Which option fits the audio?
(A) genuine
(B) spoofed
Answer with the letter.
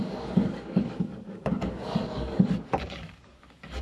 B